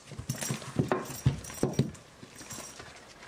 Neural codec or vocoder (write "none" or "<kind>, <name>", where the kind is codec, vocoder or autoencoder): none